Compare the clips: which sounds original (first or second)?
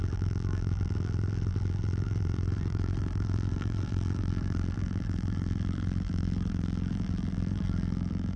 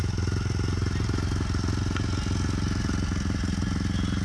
second